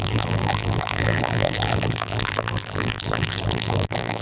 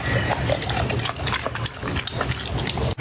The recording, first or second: second